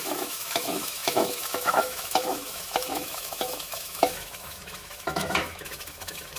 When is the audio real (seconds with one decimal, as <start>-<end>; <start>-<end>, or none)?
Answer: none